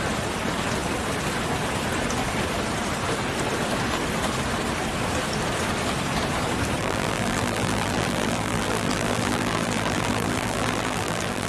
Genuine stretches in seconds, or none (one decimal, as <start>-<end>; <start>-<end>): 0.0-6.8